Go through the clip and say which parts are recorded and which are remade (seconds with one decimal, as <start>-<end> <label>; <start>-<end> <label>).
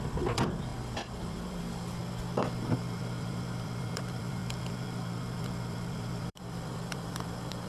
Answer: 0.0-2.0 remade; 2.0-2.6 recorded; 2.6-7.7 remade